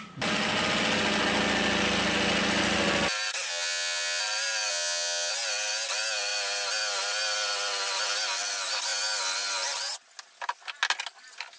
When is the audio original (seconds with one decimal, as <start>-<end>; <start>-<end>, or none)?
0.0-3.5; 4.2-4.7; 5.3-11.6